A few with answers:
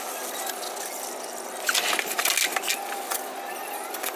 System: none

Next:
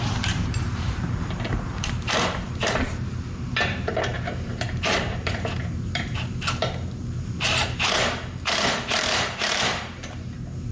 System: vocoder, BigVGAN v2